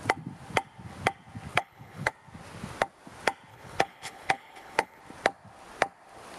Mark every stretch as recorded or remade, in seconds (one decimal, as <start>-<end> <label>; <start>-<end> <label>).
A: 0.0-1.5 recorded; 1.5-2.1 remade; 2.1-3.5 recorded; 3.5-5.0 remade; 5.0-6.4 recorded